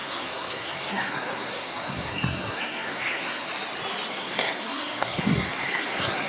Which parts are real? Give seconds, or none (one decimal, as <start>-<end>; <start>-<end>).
3.5-4.1